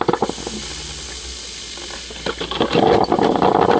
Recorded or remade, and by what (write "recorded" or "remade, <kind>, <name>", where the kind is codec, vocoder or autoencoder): recorded